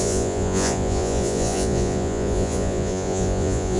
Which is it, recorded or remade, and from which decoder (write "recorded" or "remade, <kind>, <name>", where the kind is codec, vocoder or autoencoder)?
remade, vocoder, Vocos